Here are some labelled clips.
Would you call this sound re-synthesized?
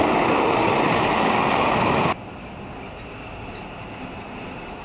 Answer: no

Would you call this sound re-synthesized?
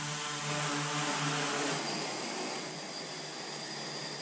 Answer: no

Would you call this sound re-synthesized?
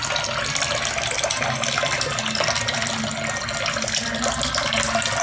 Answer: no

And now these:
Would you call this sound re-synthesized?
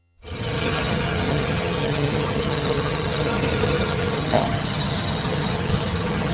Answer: yes